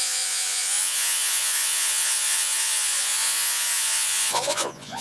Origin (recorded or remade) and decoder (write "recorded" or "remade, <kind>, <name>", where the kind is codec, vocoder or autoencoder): remade, vocoder, Vocos